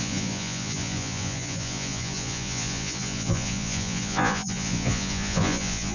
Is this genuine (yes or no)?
no